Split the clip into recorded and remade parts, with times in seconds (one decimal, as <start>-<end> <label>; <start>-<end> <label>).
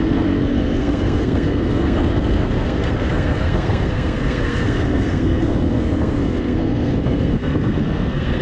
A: 0.0-8.4 remade